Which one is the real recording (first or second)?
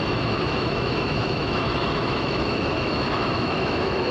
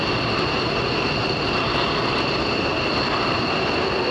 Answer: second